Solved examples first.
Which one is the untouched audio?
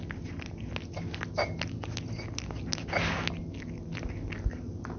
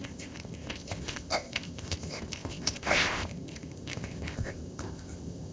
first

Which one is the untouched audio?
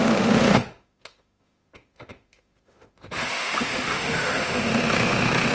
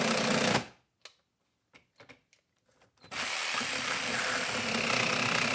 second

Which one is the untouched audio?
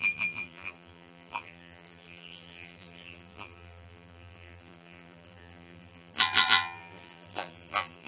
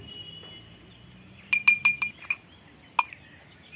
second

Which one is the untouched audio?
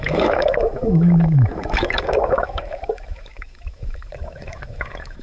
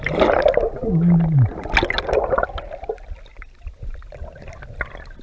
second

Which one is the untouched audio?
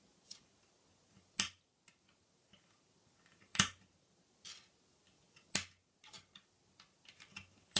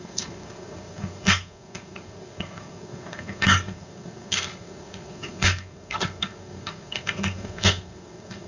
first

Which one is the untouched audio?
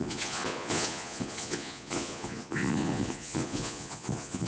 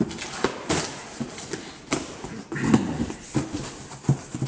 second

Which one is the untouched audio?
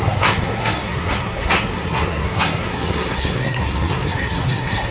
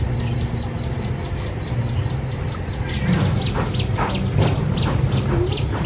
second